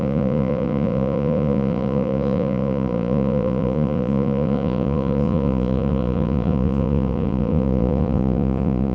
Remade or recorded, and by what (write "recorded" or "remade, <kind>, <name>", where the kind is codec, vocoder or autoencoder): remade, vocoder, Vocos